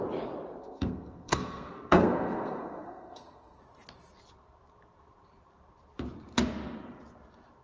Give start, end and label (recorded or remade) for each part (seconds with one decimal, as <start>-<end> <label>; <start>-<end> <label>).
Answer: 0.0-0.6 recorded; 0.6-3.6 remade; 3.6-7.6 recorded